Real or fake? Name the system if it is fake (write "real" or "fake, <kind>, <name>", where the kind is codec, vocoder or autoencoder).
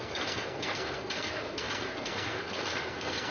fake, codec, SNAC